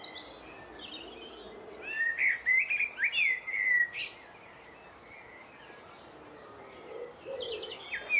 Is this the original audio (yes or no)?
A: yes